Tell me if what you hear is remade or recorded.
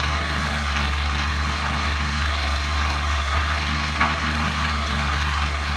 remade